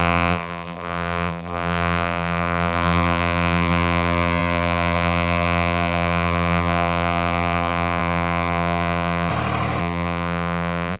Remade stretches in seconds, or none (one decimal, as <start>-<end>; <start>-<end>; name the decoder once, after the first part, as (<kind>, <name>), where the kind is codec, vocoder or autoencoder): 0.0-9.3 (vocoder, BigVGAN v2); 9.8-11.0